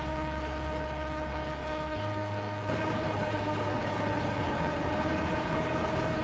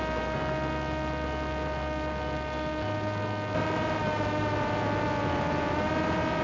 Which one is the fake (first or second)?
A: first